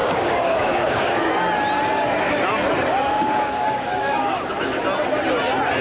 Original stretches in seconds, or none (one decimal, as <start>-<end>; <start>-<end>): 1.3-3.1; 4.8-5.8